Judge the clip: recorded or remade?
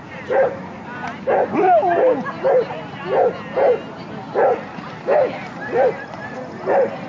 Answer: recorded